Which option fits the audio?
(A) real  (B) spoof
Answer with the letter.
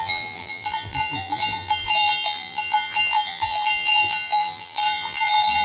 B